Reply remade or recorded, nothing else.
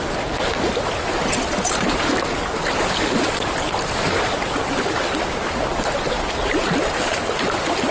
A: remade